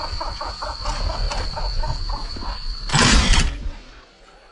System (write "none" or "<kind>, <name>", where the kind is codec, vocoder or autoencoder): none